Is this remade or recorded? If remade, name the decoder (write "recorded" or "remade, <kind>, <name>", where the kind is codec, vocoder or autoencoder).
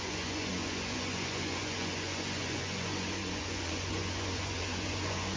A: remade, vocoder, Vocos